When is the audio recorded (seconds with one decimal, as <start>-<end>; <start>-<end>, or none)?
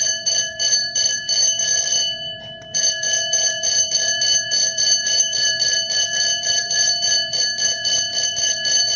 none